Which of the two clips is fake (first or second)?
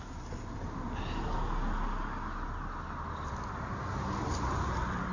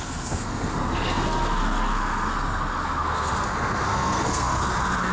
second